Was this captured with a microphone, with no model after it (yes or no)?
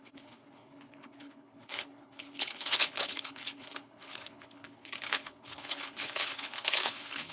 no